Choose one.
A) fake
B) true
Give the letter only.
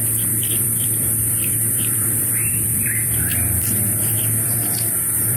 A